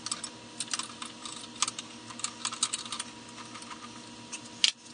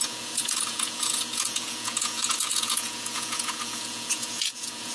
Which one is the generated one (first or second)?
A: second